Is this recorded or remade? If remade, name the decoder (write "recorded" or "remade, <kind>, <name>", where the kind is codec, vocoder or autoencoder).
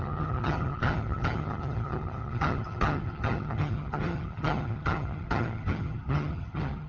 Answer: remade, vocoder, HiFi-GAN